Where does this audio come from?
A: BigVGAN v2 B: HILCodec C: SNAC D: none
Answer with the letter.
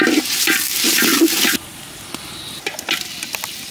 D